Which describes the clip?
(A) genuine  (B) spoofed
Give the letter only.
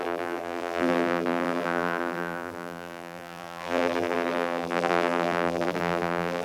B